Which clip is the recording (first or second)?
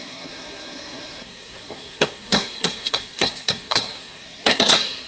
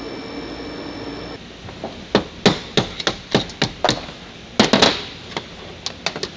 second